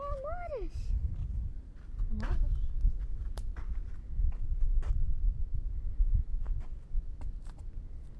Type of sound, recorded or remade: recorded